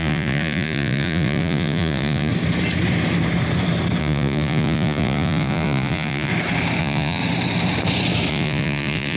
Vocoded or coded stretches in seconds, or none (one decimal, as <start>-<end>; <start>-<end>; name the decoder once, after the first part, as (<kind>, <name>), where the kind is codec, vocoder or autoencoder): 0.0-2.3 (vocoder, Vocos); 4.0-6.3; 6.8-7.2; 8.3-9.2